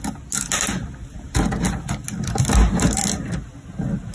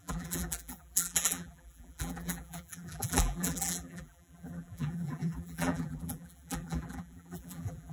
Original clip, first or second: first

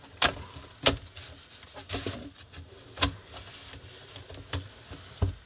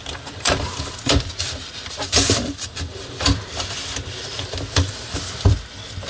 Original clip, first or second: first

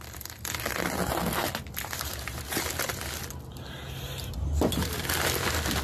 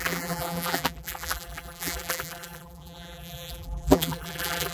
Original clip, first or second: first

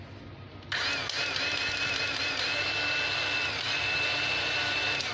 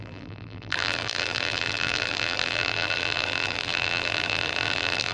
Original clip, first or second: first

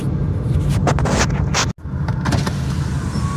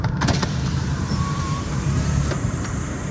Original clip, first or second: first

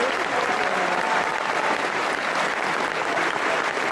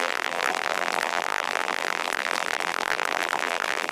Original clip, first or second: first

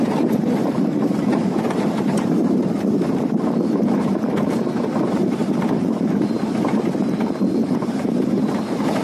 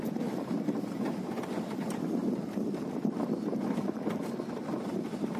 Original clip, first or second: second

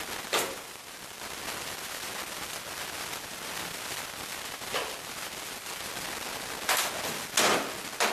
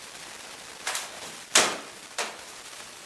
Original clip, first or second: first